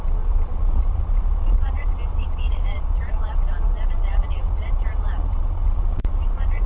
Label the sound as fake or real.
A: fake